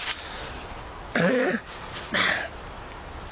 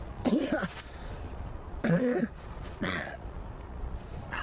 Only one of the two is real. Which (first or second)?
first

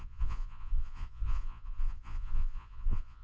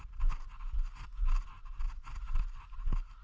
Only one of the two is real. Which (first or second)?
second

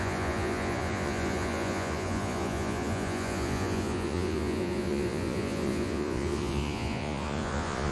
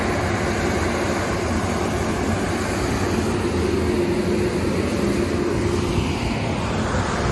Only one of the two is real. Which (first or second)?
second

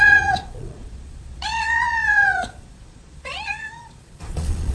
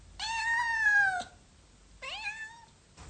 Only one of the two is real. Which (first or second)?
second